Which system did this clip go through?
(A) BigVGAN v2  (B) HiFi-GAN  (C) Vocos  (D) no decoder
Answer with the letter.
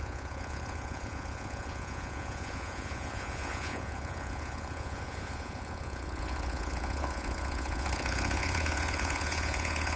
C